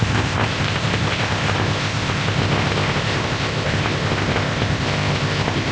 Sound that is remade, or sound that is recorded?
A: remade